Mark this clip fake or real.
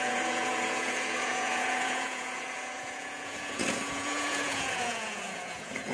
fake